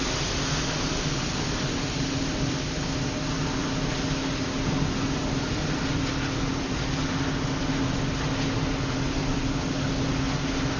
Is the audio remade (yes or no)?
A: no